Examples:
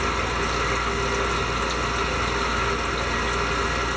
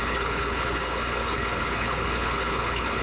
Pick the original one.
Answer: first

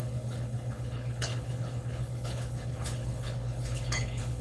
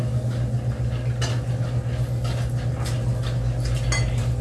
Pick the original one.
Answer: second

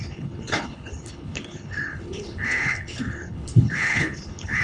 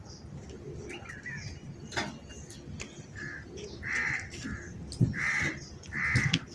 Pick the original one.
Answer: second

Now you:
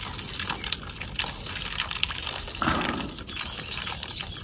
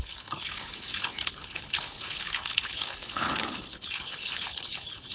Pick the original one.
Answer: first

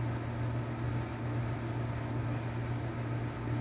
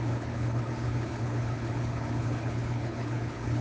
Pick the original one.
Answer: first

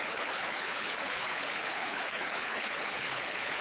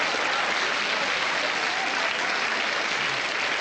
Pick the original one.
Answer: second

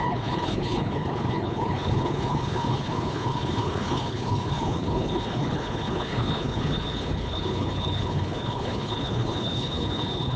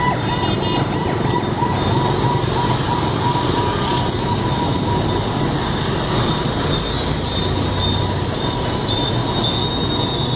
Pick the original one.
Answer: second